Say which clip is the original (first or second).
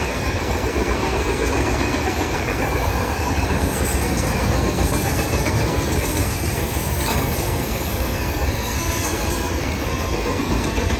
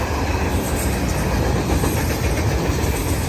second